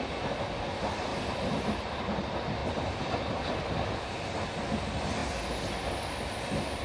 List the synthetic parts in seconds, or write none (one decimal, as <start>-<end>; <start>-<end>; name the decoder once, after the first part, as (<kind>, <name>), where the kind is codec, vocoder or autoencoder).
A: 1.1-2.2 (vocoder, BigVGAN v2); 2.6-4.1